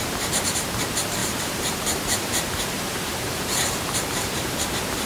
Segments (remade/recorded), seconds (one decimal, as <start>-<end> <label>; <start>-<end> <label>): 0.0-1.2 recorded; 1.2-4.3 remade; 4.3-5.1 recorded